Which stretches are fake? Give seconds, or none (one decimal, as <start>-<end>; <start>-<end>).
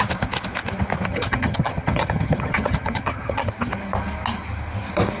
1.1-3.5